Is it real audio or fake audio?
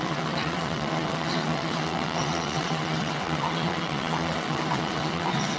fake